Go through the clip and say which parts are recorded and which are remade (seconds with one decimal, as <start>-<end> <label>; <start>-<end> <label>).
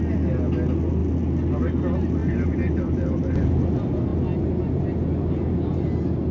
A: 0.0-2.2 recorded; 2.2-3.5 remade; 3.5-6.3 recorded